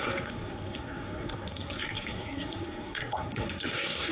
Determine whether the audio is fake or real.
fake